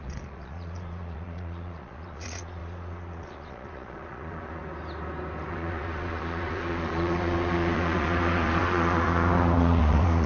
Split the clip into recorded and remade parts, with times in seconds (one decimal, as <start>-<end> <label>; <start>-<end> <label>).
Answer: 0.0-4.6 remade; 4.6-5.5 recorded; 5.5-10.3 remade